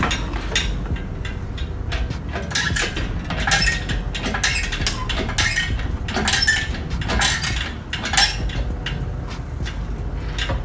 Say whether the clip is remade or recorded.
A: recorded